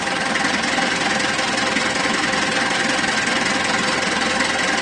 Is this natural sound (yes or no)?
yes